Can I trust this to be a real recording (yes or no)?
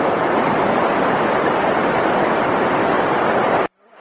yes